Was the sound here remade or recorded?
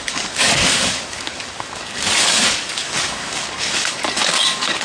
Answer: remade